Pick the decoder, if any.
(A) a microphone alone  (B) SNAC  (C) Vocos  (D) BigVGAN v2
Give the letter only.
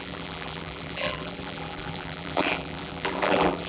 D